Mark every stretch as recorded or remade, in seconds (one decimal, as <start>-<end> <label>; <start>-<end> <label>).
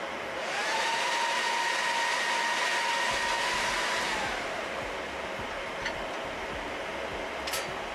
0.0-7.9 recorded